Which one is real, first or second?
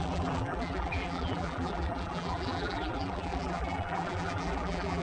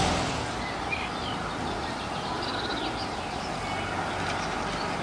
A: second